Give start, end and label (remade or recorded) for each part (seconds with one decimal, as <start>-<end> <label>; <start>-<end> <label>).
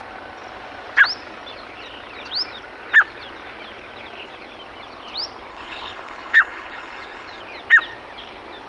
0.0-5.5 recorded; 5.5-7.4 remade; 7.4-8.7 recorded